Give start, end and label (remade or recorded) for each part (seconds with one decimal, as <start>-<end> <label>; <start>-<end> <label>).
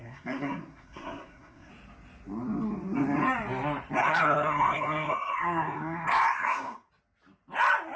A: 0.0-1.7 remade; 1.7-4.0 recorded; 4.0-6.9 remade; 6.9-8.0 recorded